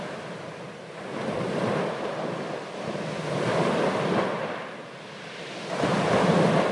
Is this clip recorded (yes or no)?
yes